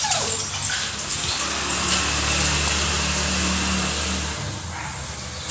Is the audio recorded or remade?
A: recorded